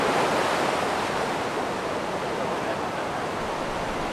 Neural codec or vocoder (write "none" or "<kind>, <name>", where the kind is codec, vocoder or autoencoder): none